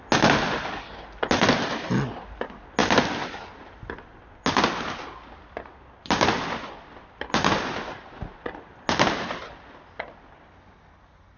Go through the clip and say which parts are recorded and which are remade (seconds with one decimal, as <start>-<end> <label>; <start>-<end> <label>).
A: 0.0-11.4 recorded